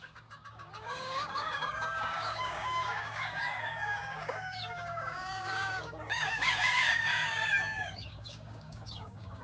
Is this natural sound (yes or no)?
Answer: no